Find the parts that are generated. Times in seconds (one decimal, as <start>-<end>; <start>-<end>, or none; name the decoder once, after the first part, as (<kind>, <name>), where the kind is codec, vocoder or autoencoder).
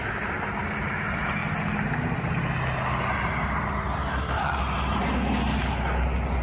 4.1-4.6 (codec, SNAC)